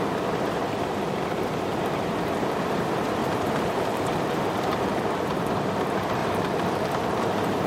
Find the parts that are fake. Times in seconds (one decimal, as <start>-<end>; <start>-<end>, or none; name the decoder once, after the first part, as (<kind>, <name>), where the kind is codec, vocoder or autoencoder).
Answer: 3.2-5.1 (vocoder, BigVGAN v2); 6.2-7.7